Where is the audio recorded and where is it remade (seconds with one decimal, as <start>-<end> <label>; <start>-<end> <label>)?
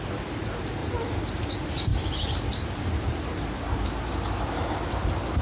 0.0-5.4 recorded